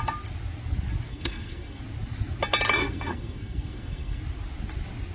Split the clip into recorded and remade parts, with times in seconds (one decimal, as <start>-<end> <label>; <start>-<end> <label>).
0.0-1.1 recorded; 1.1-1.8 remade; 1.8-2.8 recorded; 2.8-4.2 remade; 4.2-5.1 recorded